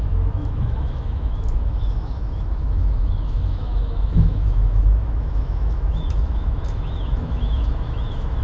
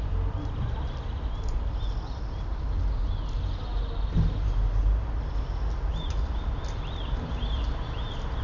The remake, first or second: first